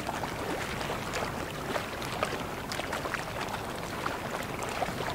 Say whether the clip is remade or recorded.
recorded